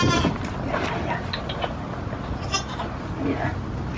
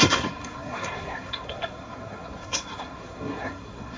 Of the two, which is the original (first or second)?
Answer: first